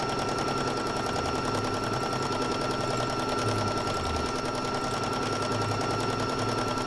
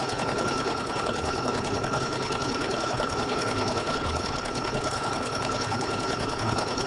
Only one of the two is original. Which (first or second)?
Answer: first